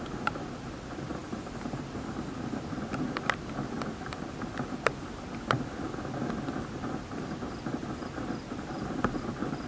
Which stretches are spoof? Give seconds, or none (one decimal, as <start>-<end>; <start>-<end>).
none